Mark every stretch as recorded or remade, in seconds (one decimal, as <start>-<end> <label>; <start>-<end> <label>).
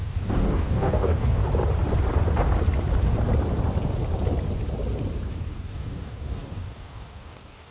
0.0-1.4 remade; 1.4-5.4 recorded; 5.4-7.7 remade